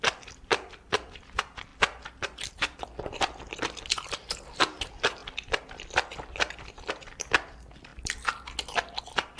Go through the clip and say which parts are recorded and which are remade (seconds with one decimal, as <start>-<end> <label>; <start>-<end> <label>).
0.0-5.2 remade; 5.2-6.9 recorded; 6.9-7.9 remade; 7.9-9.0 recorded; 9.0-9.4 remade